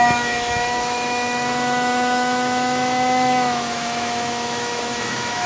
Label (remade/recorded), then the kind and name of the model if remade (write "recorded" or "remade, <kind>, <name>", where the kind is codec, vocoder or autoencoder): remade, autoencoder, DAC-VAE